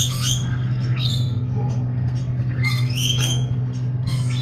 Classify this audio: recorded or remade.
remade